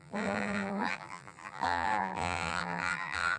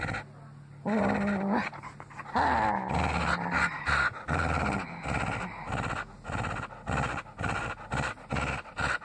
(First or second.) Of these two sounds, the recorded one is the second